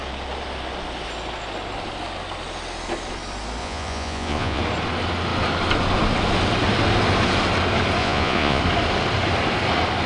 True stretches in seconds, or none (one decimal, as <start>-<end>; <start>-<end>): 0.0-3.6; 4.6-8.0; 8.6-10.1